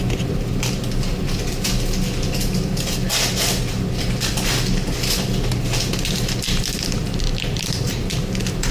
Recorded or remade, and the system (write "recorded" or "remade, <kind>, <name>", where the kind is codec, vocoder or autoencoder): recorded